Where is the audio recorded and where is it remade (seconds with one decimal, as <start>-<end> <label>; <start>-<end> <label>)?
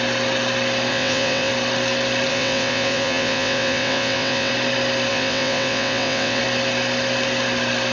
0.0-0.9 recorded; 0.9-1.5 remade; 1.5-2.3 recorded; 2.3-4.5 remade; 4.5-5.1 recorded; 5.1-6.4 remade; 6.4-7.9 recorded